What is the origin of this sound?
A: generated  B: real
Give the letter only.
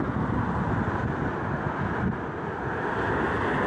B